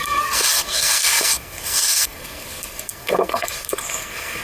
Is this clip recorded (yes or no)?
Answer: no